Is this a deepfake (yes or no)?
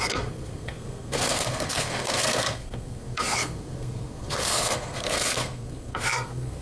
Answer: yes